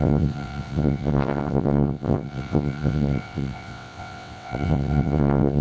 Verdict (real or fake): fake